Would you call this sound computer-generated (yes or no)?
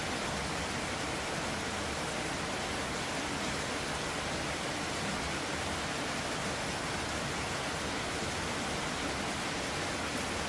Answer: no